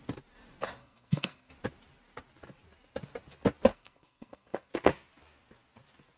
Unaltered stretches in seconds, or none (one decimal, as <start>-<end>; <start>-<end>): 0.0-0.8; 1.5-3.7; 4.7-6.2